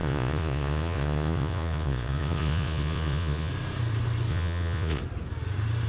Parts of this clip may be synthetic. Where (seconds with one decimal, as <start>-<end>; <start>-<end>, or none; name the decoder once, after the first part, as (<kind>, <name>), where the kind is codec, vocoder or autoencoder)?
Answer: 0.0-3.5 (vocoder, Vocos); 4.3-5.0